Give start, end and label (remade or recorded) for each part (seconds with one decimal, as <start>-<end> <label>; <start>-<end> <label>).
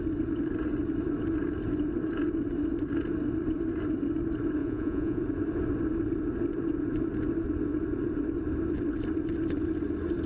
0.0-4.6 recorded; 4.6-5.2 remade; 5.2-10.3 recorded